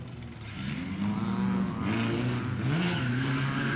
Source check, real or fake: real